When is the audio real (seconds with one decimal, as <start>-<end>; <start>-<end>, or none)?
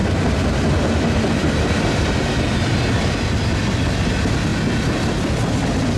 0.0-6.0